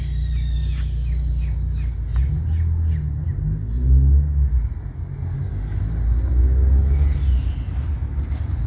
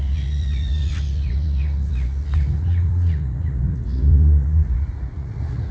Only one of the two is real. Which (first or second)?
first